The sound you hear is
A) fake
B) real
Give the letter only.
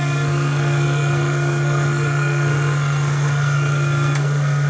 A